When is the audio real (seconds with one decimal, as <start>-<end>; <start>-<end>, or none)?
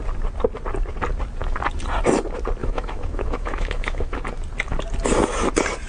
0.0-2.6; 4.2-5.9